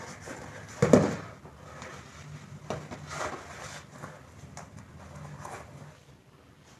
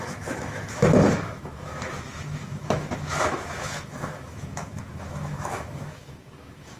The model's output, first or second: second